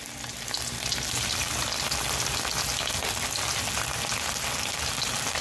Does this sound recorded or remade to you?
recorded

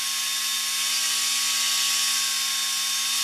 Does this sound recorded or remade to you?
recorded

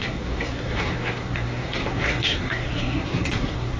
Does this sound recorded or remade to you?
remade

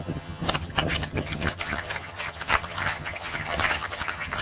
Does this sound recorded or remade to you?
remade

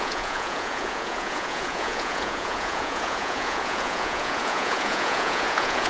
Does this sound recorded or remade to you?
remade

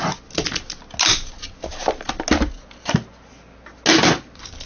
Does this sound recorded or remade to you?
recorded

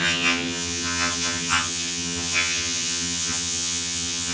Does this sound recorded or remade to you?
remade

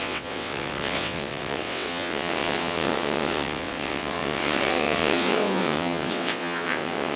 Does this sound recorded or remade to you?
remade